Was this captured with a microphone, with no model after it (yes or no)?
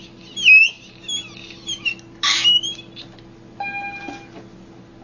yes